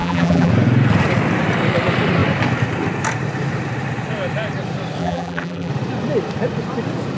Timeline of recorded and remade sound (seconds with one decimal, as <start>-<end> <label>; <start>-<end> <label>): 0.0-0.5 remade; 0.5-5.0 recorded; 5.0-5.7 remade; 5.7-7.2 recorded

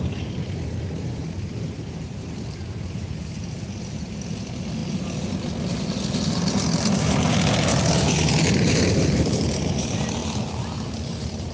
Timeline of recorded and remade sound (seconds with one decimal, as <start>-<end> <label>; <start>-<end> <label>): 0.0-4.8 remade; 4.8-8.9 recorded; 8.9-10.2 remade; 10.2-10.9 recorded; 10.9-11.5 remade

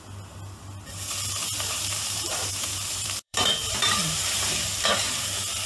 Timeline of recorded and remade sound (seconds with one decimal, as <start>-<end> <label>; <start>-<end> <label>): 0.0-1.4 recorded; 1.4-4.5 remade; 4.5-5.7 recorded